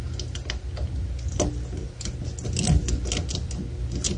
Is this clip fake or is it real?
real